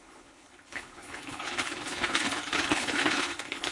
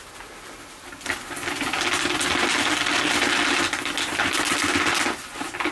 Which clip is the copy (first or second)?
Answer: first